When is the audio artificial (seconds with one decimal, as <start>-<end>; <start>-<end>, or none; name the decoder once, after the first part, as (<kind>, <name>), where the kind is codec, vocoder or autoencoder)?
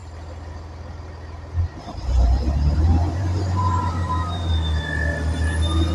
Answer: 1.7-4.5 (vocoder, BigVGAN v2)